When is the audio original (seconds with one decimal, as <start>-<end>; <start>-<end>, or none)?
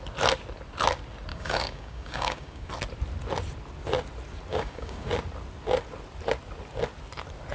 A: 0.0-1.3; 2.7-4.5; 5.1-7.5